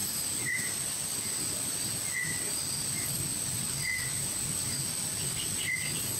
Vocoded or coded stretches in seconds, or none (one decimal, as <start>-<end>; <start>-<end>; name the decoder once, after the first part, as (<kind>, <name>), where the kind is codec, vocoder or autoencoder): none